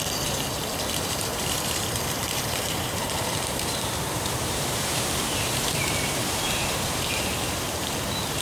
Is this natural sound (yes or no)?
no